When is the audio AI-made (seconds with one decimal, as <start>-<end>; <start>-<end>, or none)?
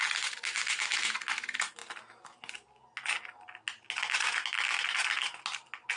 none